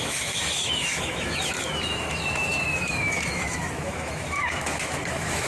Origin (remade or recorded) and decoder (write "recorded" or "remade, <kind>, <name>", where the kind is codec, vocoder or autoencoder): remade, autoencoder, DAC-VAE